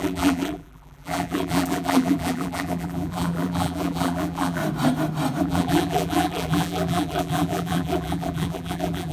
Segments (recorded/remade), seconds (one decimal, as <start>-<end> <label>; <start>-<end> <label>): 0.0-4.6 remade; 4.6-5.4 recorded; 5.4-9.1 remade